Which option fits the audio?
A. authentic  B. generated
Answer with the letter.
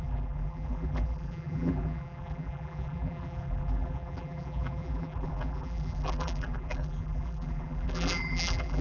B